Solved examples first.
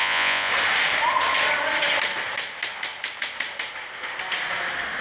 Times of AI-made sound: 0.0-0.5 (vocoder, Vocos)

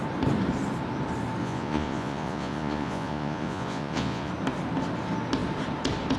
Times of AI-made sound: 1.4-4.3 (vocoder, Vocos)

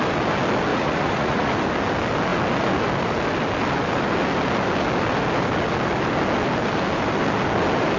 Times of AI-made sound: 0.7-1.5 (vocoder, Vocos)